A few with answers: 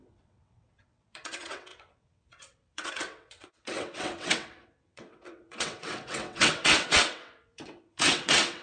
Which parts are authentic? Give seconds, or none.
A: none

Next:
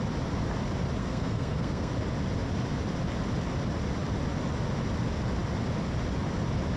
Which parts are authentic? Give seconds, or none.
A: 0.0-1.0; 1.9-6.8

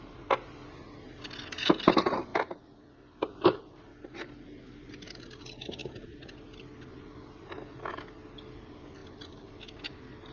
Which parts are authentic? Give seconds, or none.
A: 0.0-10.3

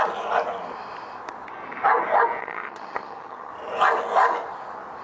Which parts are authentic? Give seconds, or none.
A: 0.0-2.4; 3.5-5.0

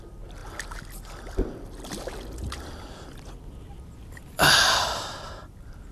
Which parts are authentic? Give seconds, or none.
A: 0.0-5.9